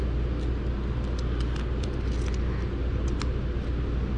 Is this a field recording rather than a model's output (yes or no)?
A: yes